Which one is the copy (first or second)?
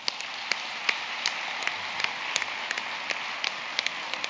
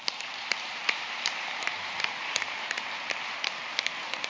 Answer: second